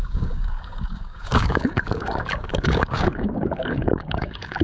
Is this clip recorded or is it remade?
remade